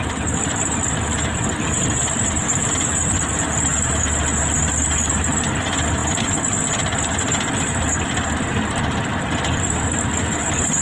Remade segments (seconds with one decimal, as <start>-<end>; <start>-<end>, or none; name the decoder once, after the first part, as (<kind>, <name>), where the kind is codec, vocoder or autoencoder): none